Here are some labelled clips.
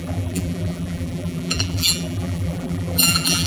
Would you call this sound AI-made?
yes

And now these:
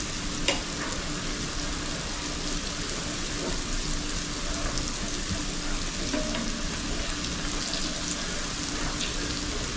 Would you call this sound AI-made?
no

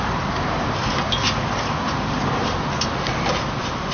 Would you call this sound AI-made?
no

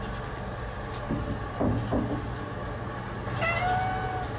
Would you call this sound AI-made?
no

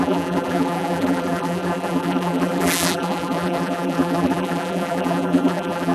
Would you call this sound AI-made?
yes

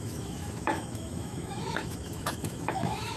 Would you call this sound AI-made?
yes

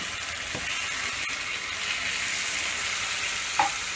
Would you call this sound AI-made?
no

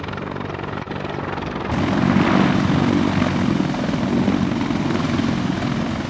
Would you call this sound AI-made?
no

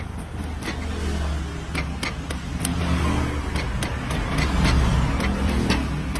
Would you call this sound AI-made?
no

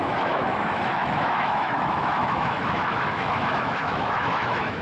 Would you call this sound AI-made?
yes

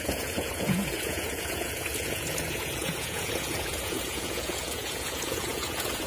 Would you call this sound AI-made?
yes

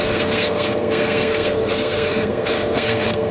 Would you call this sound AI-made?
yes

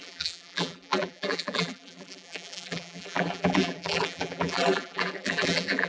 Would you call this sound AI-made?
yes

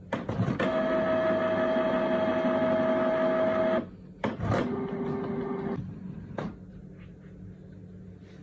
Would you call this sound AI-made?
no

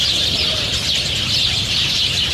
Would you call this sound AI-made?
no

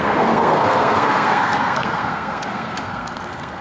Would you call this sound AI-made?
yes